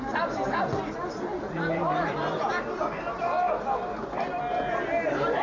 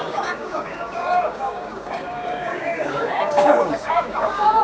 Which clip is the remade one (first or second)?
second